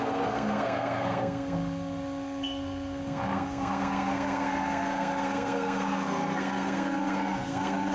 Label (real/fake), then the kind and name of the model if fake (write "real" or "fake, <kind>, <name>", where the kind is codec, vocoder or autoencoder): fake, codec, SNAC